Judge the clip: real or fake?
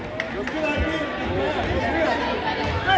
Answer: real